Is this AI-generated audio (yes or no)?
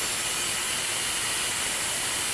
no